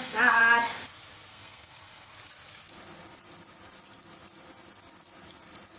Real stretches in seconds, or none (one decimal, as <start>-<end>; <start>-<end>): 0.4-1.3; 2.1-5.8